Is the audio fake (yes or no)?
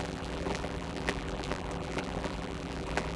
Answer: yes